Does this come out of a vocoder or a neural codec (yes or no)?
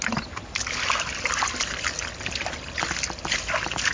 no